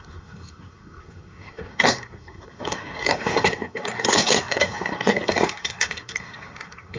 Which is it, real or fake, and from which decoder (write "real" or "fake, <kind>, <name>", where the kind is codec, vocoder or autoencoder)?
fake, codec, SNAC